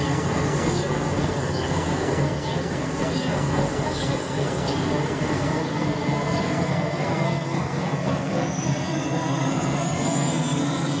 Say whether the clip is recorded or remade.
remade